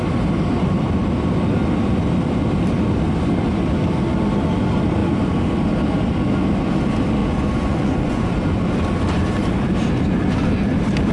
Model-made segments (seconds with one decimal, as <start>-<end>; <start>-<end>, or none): 7.2-8.3